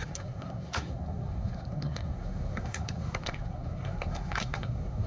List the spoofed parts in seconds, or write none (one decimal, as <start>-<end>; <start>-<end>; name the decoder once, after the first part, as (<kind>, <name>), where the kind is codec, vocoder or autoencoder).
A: 0.0-5.1 (codec, SNAC)